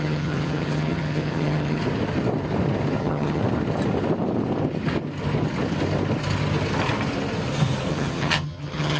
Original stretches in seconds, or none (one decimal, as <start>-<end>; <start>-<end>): 1.8-3.0; 3.4-7.9